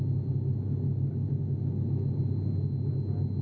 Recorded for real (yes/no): yes